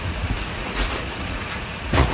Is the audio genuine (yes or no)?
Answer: no